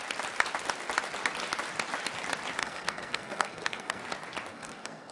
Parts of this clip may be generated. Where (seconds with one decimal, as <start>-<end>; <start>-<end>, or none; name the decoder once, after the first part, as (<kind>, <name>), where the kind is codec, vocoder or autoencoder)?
2.6-4.0 (codec, SNAC); 4.5-5.1